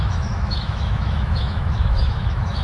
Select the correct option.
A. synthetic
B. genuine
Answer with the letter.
A